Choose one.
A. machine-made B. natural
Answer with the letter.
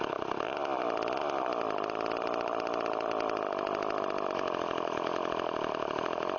B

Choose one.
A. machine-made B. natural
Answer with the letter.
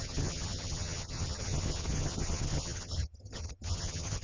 A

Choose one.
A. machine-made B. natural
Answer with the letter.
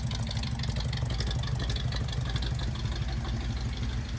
B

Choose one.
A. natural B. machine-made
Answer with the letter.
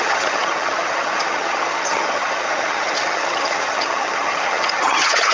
B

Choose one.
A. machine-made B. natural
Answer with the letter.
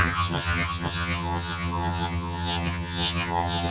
A